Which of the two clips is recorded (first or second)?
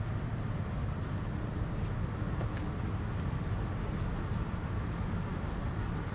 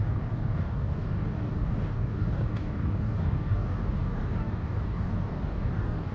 first